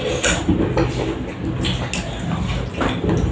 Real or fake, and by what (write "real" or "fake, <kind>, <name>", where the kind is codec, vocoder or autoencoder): real